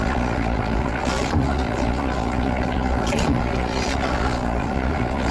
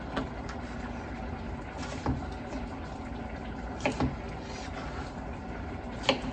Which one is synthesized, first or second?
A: first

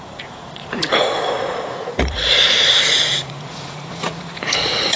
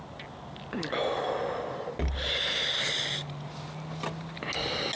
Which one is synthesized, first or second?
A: first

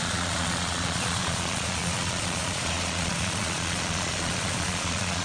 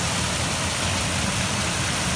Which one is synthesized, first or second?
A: first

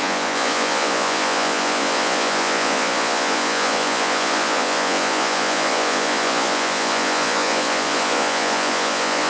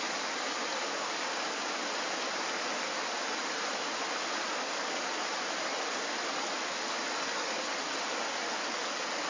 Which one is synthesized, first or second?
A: first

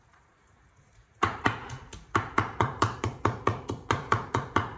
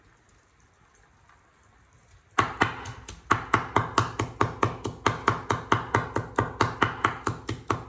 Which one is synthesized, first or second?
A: first